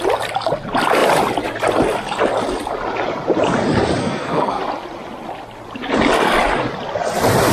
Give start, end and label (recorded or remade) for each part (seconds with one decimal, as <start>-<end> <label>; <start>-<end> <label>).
0.0-4.0 recorded; 4.0-4.6 remade; 4.6-7.5 recorded